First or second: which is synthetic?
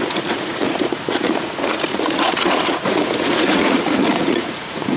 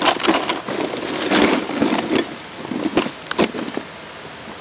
first